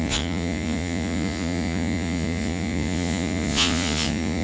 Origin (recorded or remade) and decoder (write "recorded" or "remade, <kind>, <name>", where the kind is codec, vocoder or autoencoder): remade, vocoder, Vocos